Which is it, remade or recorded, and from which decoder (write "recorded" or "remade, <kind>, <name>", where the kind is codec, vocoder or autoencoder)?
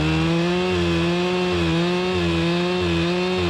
recorded